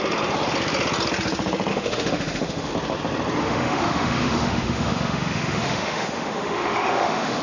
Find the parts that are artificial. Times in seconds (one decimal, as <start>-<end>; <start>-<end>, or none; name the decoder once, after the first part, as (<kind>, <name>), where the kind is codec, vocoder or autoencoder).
1.7-2.7 (autoencoder, DAC-VAE); 3.4-7.4